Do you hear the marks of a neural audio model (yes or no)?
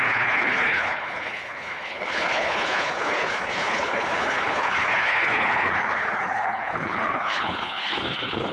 yes